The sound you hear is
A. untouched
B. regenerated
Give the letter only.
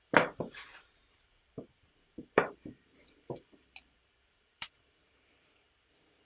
B